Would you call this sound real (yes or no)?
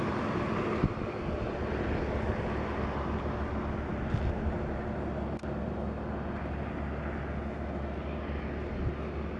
yes